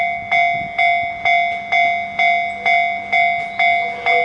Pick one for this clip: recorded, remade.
recorded